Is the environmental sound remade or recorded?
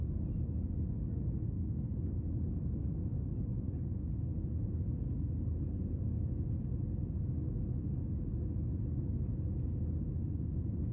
recorded